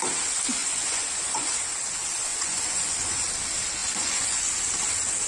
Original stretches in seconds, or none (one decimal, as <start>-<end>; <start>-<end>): 0.0-0.6; 1.6-2.3; 3.3-3.8; 4.4-5.3